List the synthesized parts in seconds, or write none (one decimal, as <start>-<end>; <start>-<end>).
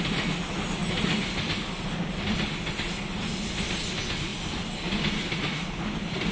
none